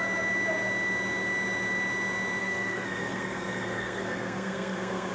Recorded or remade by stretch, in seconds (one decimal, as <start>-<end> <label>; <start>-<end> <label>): 0.0-2.4 recorded; 2.4-5.1 remade